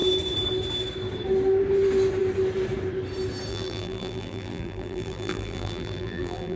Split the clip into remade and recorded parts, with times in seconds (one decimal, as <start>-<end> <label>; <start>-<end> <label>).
0.0-3.5 recorded; 3.5-6.6 remade